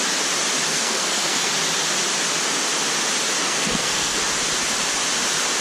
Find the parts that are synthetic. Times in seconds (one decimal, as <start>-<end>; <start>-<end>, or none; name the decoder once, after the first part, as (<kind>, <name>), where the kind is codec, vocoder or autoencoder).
0.7-1.5 (codec, SNAC); 3.4-4.2